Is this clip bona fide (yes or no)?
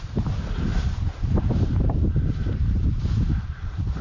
no